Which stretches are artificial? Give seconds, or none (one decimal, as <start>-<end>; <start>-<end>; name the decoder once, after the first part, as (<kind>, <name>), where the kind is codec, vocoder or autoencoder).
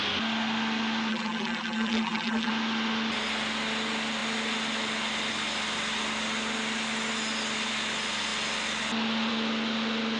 1.1-2.5 (vocoder, BigVGAN v2)